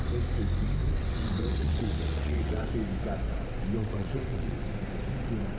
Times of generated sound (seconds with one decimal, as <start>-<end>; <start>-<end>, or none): 0.8-2.7; 3.8-4.6